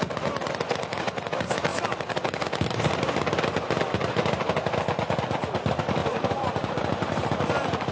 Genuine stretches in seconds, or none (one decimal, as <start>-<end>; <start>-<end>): 0.0-6.0; 7.2-7.9

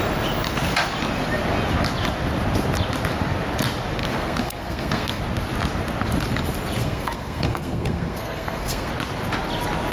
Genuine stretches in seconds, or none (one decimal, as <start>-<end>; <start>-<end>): 0.0-4.0; 5.2-6.8; 8.9-9.9

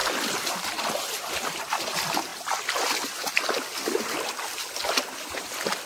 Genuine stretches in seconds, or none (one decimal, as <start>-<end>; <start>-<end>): 1.8-5.9

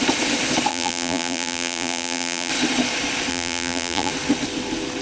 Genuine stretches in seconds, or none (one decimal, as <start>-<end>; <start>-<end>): 0.0-0.7; 2.5-3.3; 4.1-5.0

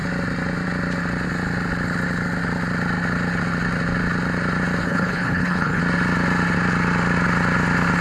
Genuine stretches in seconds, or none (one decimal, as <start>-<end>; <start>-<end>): 0.0-4.8; 5.8-8.0

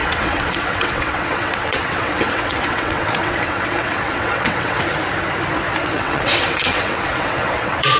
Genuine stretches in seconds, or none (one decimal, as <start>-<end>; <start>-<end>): 4.8-5.8

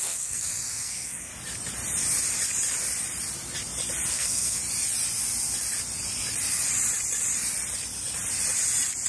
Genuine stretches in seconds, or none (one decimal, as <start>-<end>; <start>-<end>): 1.3-4.1; 4.6-9.1

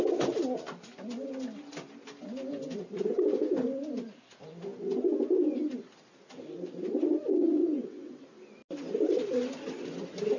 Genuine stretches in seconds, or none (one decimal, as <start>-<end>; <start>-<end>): 0.0-7.6; 8.2-10.4